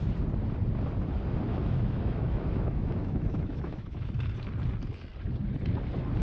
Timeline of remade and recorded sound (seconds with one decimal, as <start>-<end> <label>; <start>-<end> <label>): 0.0-1.5 recorded; 1.5-4.1 remade; 4.1-6.2 recorded